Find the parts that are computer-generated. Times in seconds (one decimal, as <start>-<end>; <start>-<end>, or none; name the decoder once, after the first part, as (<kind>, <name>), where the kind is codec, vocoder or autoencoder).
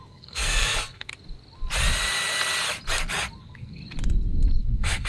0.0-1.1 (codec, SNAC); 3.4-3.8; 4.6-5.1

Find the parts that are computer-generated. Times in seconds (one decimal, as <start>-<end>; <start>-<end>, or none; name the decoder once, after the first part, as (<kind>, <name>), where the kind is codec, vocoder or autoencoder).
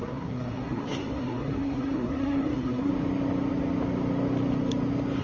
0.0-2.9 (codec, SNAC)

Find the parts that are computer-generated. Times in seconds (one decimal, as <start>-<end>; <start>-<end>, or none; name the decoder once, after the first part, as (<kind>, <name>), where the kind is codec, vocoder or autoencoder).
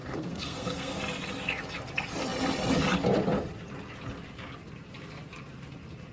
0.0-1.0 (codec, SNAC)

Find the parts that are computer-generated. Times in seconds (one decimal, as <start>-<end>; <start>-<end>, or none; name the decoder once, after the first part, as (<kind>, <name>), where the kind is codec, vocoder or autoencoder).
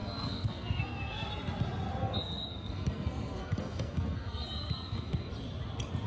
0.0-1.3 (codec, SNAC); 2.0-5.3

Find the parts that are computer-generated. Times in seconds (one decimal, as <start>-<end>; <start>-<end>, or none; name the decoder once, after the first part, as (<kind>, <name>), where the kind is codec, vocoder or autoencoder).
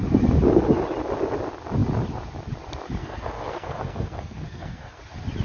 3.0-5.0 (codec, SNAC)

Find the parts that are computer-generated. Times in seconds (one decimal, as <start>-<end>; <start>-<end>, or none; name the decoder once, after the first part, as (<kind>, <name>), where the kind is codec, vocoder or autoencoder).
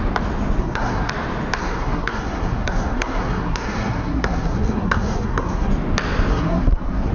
0.6-1.1 (codec, SNAC); 1.6-5.7; 6.3-7.1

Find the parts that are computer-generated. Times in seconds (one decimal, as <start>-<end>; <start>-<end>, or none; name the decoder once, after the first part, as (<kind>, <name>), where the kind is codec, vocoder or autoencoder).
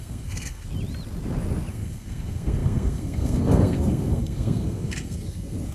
0.0-0.7 (codec, SNAC); 1.7-5.7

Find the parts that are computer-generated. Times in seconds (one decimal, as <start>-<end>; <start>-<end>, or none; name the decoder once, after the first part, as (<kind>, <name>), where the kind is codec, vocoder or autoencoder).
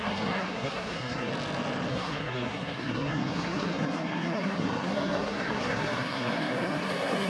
0.0-1.3 (codec, SNAC); 1.9-7.3